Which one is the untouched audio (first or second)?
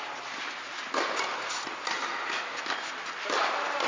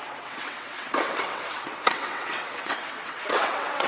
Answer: first